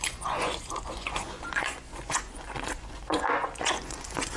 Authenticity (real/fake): fake